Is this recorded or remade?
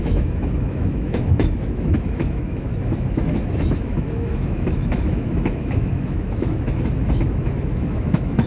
remade